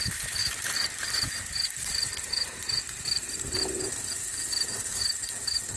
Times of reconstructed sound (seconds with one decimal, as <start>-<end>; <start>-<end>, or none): 0.4-2.2; 2.6-3.6